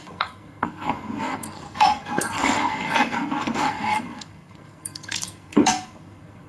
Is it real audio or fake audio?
fake